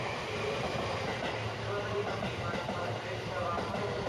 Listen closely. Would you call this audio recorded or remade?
remade